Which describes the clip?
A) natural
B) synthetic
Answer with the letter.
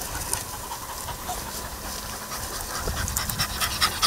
A